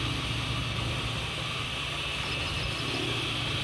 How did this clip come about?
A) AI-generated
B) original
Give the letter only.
B